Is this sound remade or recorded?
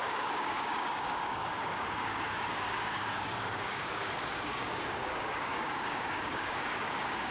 remade